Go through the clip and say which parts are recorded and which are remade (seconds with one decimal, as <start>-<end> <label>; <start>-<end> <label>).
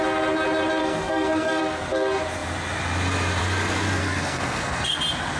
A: 0.0-0.8 recorded; 0.8-1.6 remade; 1.6-4.0 recorded; 4.0-5.0 remade; 5.0-5.4 recorded